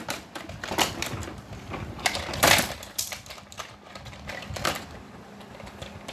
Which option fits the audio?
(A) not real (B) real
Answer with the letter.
A